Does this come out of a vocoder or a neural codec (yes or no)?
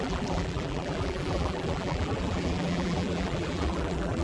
yes